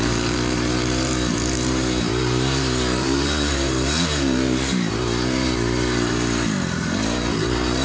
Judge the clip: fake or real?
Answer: fake